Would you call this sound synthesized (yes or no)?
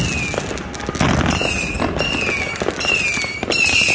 no